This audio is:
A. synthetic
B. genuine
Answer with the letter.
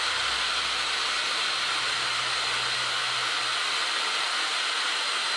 B